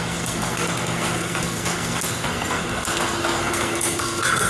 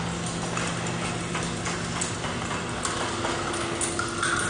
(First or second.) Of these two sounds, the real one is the second